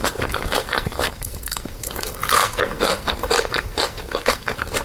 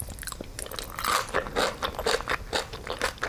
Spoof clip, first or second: first